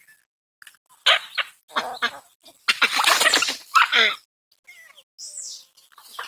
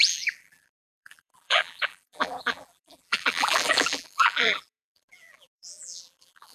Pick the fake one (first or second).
second